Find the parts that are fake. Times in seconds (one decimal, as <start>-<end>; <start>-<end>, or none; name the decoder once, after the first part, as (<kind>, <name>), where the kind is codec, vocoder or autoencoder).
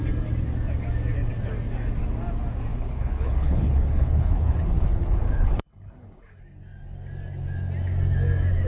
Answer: 2.7-6.4 (codec, HILCodec)